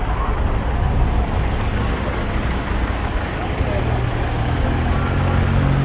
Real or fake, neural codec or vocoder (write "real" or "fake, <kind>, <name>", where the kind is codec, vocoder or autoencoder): real